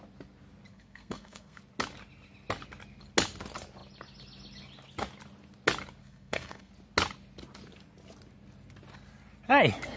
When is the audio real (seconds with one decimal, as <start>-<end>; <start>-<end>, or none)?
0.0-0.7; 1.6-6.0; 6.7-10.0